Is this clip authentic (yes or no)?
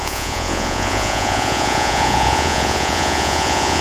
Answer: no